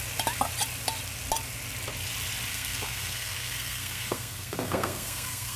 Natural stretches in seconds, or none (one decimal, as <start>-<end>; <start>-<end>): 0.0-2.5